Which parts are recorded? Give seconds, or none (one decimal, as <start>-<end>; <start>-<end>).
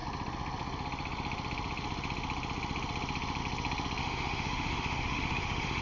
0.0-4.0